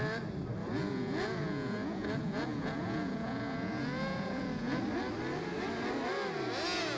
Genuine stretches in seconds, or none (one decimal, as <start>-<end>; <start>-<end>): 0.0-0.6; 4.8-7.0